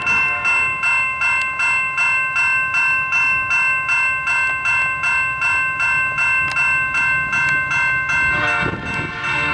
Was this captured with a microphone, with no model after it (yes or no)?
yes